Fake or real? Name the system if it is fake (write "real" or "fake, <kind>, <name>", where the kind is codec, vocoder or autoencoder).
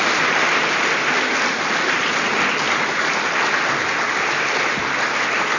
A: real